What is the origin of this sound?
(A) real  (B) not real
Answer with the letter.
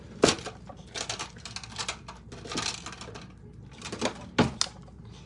A